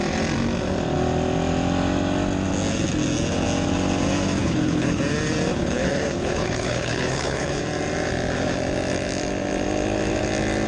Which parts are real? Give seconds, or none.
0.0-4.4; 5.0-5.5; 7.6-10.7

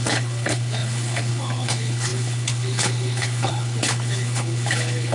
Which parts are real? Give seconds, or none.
none

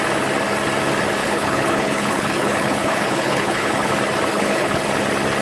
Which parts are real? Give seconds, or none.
0.0-1.2; 3.9-4.3; 4.8-5.4

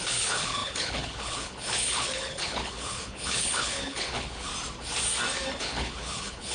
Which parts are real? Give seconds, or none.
4.5-5.6